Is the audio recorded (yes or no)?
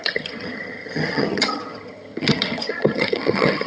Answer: no